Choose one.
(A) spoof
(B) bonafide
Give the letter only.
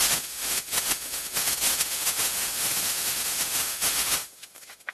A